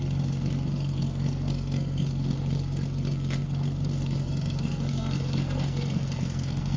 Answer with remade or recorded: remade